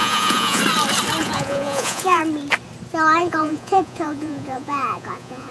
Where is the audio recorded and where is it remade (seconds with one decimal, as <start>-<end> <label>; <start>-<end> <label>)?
0.0-0.6 remade; 0.6-1.2 recorded; 1.2-2.2 remade; 2.2-3.2 recorded; 3.2-5.5 remade